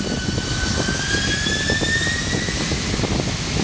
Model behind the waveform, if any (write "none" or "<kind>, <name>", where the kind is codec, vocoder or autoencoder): none